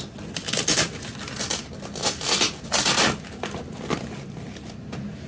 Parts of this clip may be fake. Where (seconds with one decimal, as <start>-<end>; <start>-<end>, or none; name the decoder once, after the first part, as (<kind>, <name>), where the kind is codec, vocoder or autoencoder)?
none